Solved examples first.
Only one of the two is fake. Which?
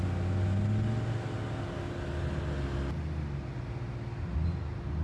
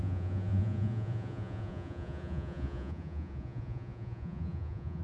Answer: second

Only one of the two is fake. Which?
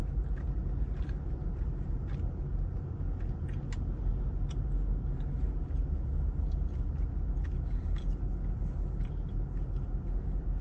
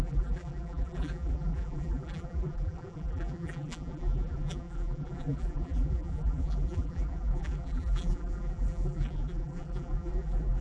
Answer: second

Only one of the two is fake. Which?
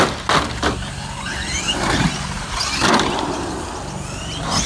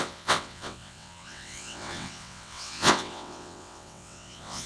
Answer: second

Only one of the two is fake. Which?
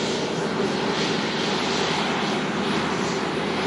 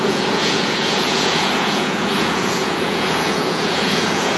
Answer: second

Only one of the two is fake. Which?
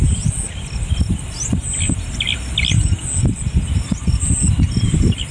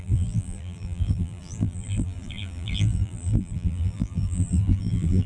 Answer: second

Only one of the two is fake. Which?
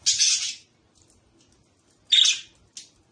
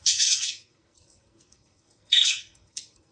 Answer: second